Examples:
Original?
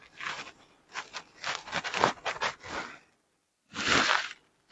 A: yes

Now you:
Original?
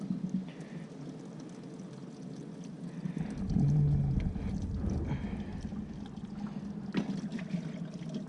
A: yes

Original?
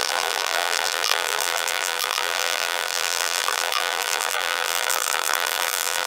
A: no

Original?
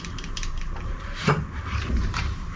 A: no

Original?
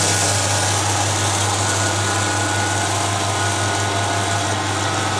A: yes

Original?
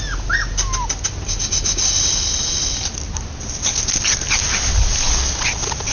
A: yes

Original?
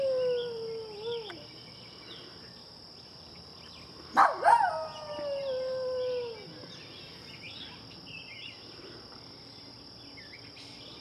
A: yes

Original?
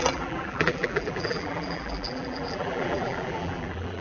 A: no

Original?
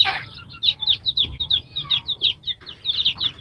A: no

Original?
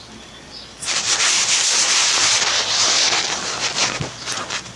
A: no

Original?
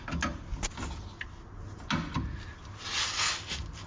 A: yes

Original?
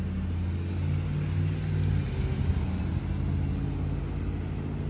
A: yes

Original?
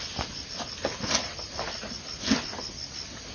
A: yes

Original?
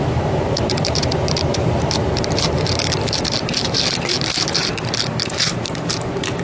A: no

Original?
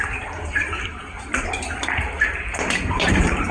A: no